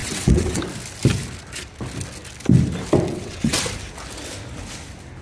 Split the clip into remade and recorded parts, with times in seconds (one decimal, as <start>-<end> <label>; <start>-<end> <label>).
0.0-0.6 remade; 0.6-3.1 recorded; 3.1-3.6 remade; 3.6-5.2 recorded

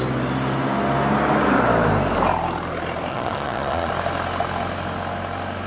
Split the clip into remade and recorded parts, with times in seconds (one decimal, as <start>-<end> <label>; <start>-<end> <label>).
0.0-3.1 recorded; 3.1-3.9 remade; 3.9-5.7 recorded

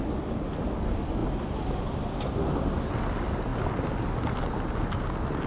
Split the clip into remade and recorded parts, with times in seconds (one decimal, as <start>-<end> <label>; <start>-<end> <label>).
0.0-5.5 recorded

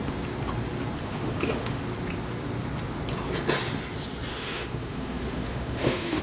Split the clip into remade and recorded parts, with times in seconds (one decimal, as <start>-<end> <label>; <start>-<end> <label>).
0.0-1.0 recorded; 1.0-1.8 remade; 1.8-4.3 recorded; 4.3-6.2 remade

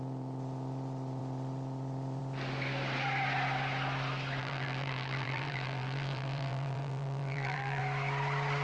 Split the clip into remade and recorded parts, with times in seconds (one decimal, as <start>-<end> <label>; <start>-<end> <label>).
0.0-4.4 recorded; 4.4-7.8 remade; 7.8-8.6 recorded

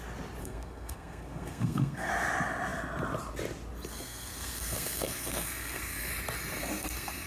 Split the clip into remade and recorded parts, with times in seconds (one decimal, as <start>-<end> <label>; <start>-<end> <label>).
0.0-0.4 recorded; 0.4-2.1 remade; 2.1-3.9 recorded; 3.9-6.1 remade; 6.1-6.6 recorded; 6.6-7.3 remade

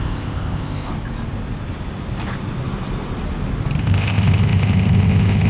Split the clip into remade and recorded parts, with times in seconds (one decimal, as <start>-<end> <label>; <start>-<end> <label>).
0.0-0.9 remade; 0.9-3.8 recorded; 3.8-5.5 remade